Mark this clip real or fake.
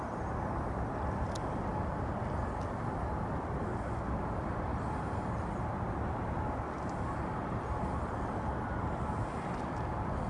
real